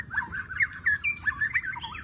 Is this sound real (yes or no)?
no